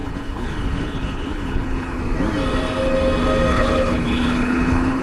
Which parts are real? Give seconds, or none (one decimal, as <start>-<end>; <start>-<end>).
2.0-3.5